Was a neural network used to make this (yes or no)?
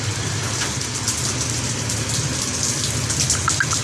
no